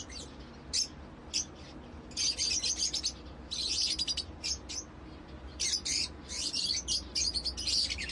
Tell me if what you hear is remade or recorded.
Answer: recorded